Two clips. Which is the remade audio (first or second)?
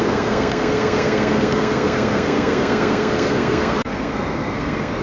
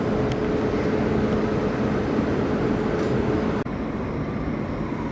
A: first